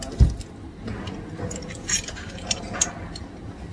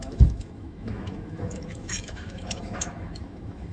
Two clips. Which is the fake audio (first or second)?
second